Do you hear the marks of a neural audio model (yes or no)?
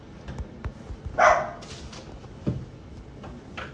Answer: no